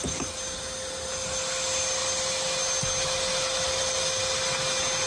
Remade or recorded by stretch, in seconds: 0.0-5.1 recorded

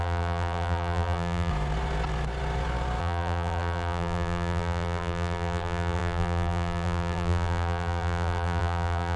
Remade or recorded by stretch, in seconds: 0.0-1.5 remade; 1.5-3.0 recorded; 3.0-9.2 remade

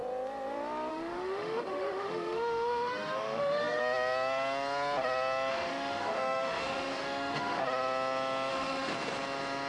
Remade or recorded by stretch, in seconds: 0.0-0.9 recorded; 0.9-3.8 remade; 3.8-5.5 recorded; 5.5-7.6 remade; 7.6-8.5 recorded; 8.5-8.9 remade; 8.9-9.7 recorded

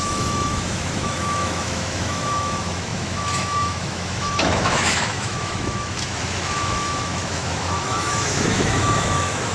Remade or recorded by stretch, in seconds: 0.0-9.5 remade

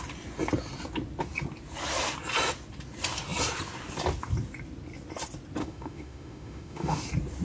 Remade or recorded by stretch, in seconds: 0.0-5.6 recorded; 5.6-7.0 remade; 7.0-7.4 recorded

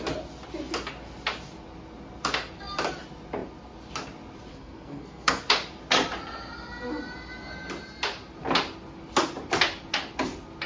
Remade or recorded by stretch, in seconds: 0.0-4.5 recorded; 4.5-5.4 remade; 5.4-10.7 recorded